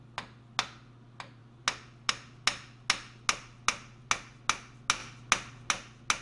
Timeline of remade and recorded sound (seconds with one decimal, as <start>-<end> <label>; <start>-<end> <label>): 0.0-6.2 recorded